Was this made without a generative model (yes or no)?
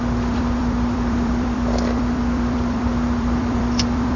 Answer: no